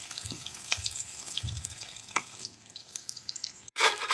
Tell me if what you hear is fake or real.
fake